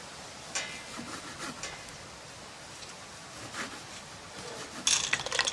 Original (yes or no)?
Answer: yes